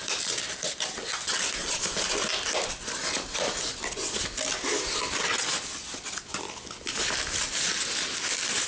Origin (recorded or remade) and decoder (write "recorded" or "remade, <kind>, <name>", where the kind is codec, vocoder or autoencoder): recorded